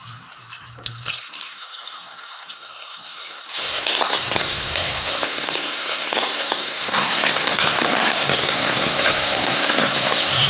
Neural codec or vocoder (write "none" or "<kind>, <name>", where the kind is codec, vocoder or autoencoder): codec, SNAC